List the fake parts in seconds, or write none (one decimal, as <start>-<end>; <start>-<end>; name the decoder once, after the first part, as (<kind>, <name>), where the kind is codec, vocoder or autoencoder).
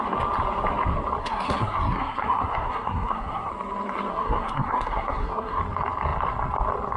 1.2-3.5 (codec, SNAC); 4.1-5.6